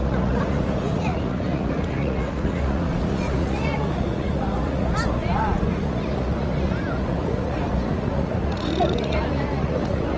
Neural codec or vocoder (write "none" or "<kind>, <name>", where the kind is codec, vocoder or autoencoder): vocoder, Vocos